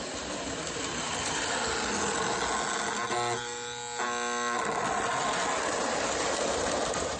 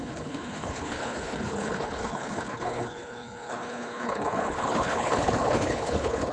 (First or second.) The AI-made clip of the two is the second